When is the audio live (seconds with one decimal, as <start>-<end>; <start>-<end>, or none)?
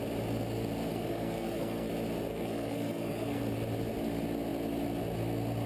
0.0-0.9; 1.9-2.3; 3.4-5.7